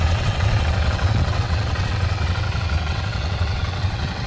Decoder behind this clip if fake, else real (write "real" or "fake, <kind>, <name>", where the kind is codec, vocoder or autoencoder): fake, vocoder, WaveNeXt